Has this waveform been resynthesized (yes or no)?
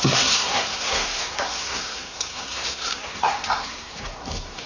yes